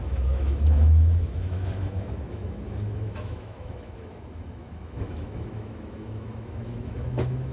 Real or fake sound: fake